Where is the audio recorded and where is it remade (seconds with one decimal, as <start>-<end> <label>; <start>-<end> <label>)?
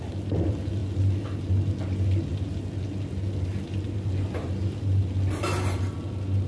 0.0-6.5 recorded